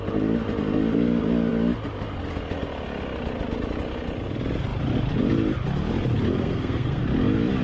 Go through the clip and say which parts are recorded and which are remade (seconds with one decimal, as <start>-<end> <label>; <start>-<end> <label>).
0.0-6.4 recorded; 6.4-7.0 remade; 7.0-7.6 recorded